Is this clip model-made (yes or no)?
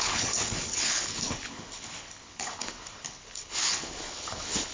yes